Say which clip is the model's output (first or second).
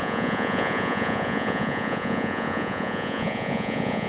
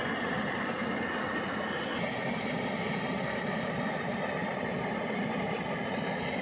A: first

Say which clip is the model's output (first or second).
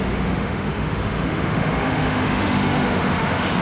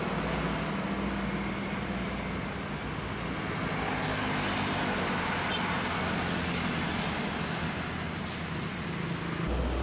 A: first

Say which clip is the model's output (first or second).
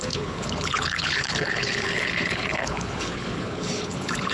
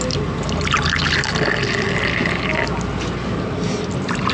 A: first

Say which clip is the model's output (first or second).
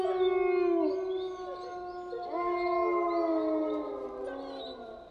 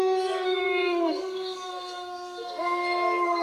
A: second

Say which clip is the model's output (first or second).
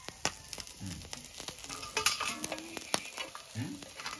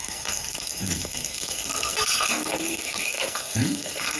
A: second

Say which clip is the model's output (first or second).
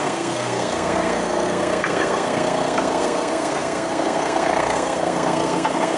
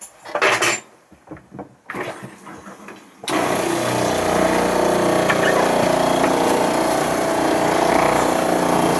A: first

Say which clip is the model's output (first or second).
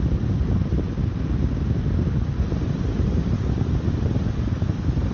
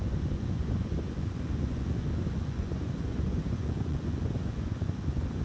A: second